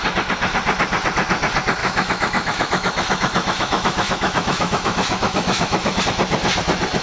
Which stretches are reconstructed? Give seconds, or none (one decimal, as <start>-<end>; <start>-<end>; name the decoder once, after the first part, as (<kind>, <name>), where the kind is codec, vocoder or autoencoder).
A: 1.8-6.0 (autoencoder, DAC-VAE)